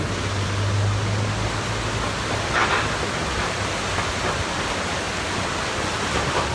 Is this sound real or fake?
real